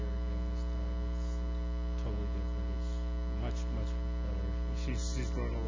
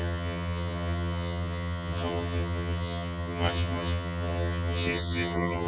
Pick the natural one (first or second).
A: first